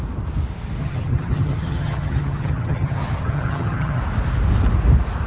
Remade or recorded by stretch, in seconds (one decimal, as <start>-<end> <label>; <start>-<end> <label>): 0.0-0.8 recorded; 0.8-4.0 remade; 4.0-5.3 recorded

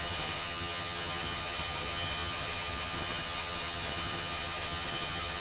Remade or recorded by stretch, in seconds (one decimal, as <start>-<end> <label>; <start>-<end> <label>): 0.0-5.4 remade

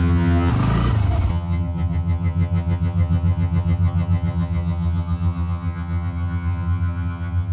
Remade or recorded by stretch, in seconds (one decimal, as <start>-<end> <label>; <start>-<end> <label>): 0.0-0.5 remade; 0.5-1.3 recorded; 1.3-7.5 remade

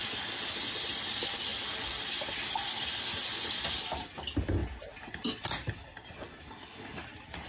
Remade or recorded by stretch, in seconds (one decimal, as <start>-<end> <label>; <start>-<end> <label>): 0.0-7.5 recorded

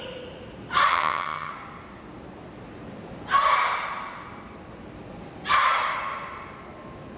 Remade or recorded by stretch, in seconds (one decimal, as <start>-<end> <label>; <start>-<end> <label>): 0.0-0.9 recorded; 0.9-1.5 remade; 1.5-7.2 recorded

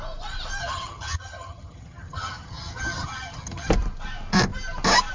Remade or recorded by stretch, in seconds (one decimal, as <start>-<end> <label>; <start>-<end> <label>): 0.0-0.6 recorded; 0.6-3.7 remade; 3.7-5.1 recorded

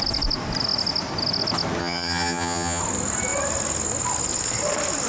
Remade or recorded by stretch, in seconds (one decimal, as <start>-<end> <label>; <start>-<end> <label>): 0.0-1.8 recorded; 1.8-2.8 remade; 2.8-5.1 recorded

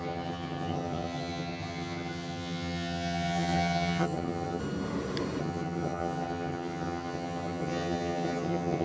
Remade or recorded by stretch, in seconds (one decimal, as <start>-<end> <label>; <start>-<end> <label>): 0.0-4.6 remade; 4.6-5.4 recorded; 5.4-8.8 remade